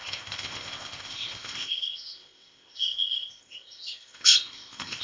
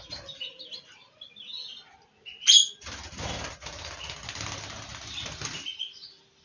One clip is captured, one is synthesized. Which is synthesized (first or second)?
first